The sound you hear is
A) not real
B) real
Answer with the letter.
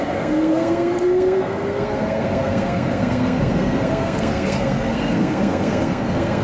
A